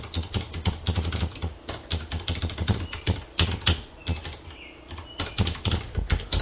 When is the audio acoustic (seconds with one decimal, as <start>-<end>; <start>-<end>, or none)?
0.0-6.4